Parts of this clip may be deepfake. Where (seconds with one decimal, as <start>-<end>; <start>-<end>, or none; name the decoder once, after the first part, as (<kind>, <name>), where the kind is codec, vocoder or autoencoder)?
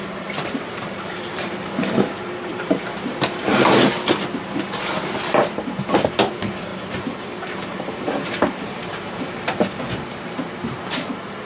0.0-3.8 (vocoder, BigVGAN v2); 6.7-11.1